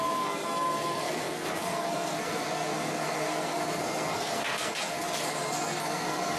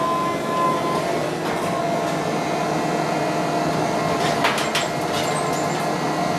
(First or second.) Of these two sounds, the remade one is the first